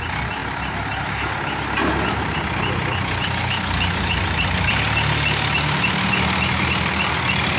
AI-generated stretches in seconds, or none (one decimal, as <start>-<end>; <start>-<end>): none